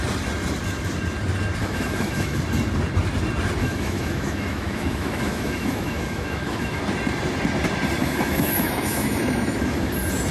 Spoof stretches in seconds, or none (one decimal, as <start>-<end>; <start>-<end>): 1.6-2.4; 3.6-6.8; 8.0-9.9